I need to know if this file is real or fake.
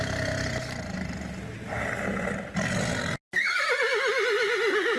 real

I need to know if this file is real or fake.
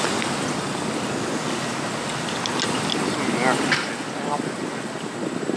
real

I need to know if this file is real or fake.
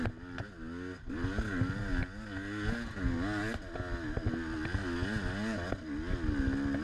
real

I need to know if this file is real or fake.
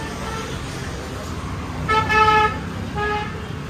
real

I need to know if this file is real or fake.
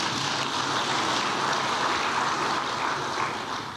real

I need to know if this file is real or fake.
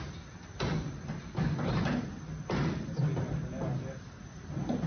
real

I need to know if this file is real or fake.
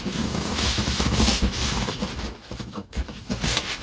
fake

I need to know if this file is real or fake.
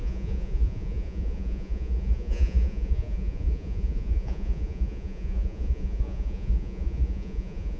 fake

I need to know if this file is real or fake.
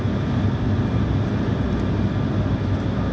real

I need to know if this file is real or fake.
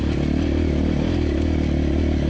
real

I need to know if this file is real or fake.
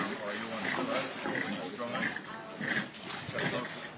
real